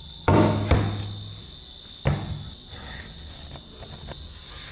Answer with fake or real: real